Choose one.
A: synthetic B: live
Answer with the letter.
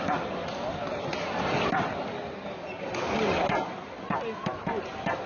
B